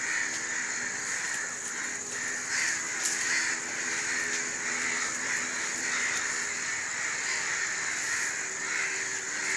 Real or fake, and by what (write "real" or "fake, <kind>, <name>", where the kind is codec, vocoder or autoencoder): real